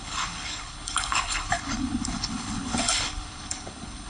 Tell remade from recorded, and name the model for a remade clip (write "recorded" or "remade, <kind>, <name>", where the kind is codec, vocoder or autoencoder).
remade, codec, HILCodec